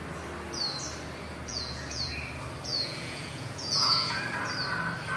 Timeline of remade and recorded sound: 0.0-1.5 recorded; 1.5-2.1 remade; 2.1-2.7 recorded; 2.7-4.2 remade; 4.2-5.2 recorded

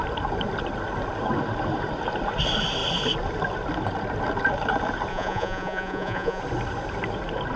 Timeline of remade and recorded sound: 0.0-5.1 recorded; 5.1-6.4 remade; 6.4-7.6 recorded

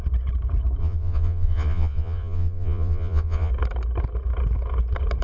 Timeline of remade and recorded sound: 0.0-0.8 recorded; 0.8-3.5 remade; 3.5-5.2 recorded

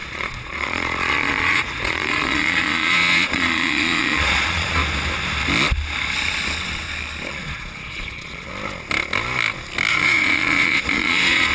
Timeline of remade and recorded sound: 0.0-4.8 remade; 4.8-7.3 recorded; 7.3-8.5 remade; 8.5-9.9 recorded; 9.9-11.5 remade

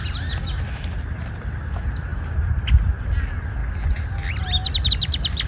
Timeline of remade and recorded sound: 0.0-5.5 recorded

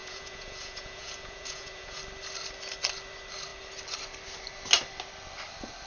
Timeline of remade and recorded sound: 0.0-2.0 remade; 2.0-5.9 recorded